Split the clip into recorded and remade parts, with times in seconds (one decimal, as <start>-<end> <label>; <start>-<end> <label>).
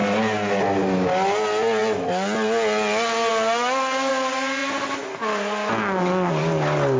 0.0-7.0 recorded